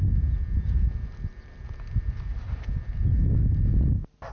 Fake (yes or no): no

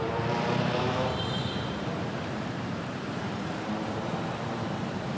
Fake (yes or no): yes